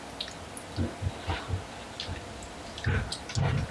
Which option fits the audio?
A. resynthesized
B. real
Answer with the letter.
B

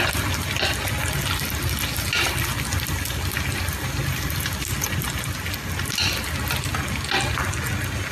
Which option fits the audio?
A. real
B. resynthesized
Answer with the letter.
A